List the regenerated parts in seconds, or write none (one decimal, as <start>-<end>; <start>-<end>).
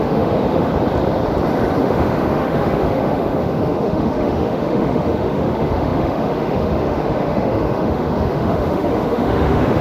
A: 0.0-0.7; 1.8-9.8